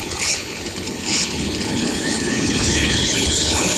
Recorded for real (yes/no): no